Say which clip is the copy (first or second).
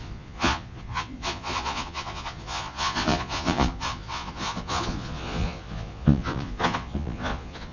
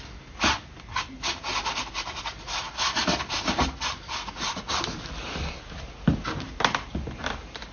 first